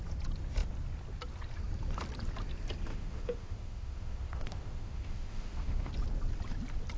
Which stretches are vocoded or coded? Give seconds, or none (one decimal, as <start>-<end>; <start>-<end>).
2.9-5.9